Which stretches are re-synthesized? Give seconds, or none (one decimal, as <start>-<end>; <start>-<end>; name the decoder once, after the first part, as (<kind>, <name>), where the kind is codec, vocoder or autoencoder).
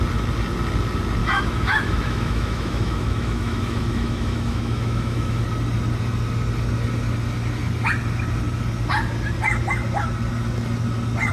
1.2-5.4 (autoencoder, DAC-VAE)